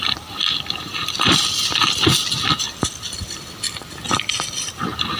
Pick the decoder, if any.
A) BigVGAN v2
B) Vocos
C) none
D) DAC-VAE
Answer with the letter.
A